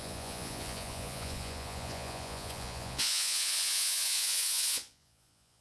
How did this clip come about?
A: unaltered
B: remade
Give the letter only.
B